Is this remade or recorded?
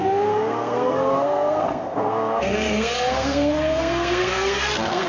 remade